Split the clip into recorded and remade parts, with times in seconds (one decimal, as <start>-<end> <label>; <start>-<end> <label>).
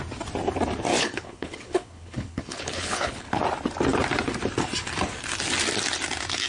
0.0-0.9 recorded; 0.9-3.4 remade; 3.4-6.5 recorded